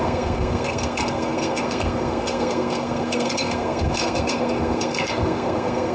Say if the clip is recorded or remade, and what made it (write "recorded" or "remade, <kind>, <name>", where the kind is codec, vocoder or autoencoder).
remade, codec, SNAC